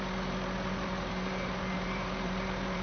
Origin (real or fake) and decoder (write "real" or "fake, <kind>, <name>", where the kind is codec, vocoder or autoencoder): fake, vocoder, BigVGAN v2